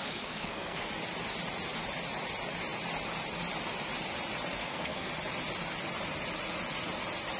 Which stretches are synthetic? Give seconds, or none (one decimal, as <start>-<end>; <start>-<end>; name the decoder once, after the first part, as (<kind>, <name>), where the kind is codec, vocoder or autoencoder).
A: 0.0-0.9 (codec, SNAC); 4.6-5.1

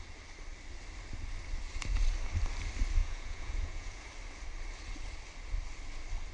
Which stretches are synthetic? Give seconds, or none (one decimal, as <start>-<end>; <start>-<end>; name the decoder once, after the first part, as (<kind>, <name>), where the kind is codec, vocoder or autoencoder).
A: 3.0-4.0 (vocoder, Vocos)